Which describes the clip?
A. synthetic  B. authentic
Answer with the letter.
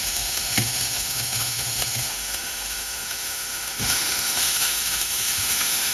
A